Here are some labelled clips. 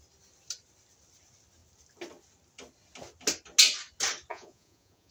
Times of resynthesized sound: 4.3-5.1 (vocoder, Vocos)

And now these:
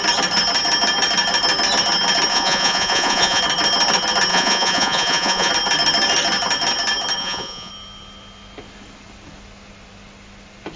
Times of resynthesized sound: 2.3-3.4 (vocoder, Vocos); 4.3-5.5; 7.2-7.7

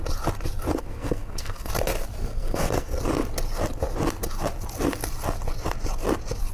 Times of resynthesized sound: 0.8-1.7 (codec, SNAC); 2.2-3.0

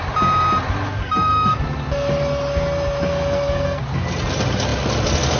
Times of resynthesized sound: 1.0-1.6 (codec, SNAC); 3.1-3.8

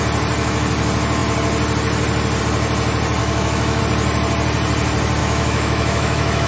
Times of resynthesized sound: 3.2-3.8 (autoencoder, DAC-VAE); 5.2-6.5